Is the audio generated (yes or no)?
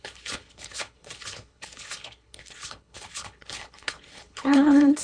yes